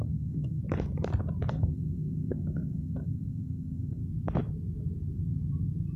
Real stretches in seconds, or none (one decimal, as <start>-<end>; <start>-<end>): 0.6-1.5; 4.0-6.0

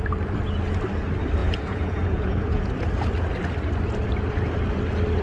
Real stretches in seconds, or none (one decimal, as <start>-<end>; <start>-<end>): 0.0-1.4; 2.7-5.2

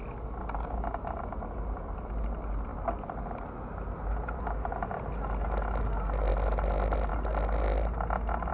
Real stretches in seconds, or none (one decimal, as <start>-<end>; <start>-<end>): 0.0-8.5

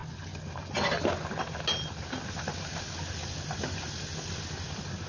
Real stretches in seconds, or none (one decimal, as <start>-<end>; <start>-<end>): 0.0-5.1

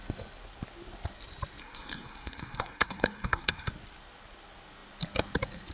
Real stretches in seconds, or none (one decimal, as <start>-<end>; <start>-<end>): 0.0-1.6; 3.7-5.7

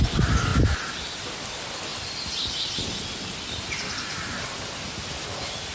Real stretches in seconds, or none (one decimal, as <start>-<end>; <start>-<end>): 0.0-5.7